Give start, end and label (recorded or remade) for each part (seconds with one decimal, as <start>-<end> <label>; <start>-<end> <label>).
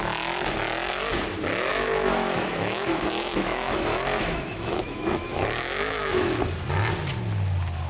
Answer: 0.0-1.7 recorded; 1.7-6.4 remade; 6.4-7.9 recorded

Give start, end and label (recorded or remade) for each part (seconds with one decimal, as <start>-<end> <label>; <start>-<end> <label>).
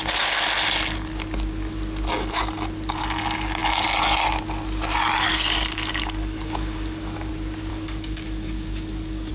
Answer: 0.0-5.3 recorded; 5.3-7.3 remade; 7.3-7.7 recorded; 7.7-9.3 remade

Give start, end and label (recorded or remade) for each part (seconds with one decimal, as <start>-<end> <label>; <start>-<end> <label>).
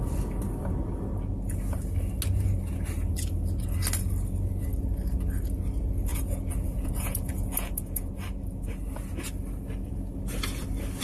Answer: 0.0-6.1 recorded; 6.1-8.2 remade; 8.2-11.0 recorded